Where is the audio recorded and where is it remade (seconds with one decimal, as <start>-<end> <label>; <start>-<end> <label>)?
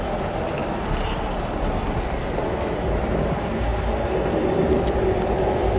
0.0-3.7 remade; 3.7-4.5 recorded; 4.5-5.8 remade